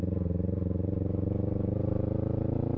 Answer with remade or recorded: recorded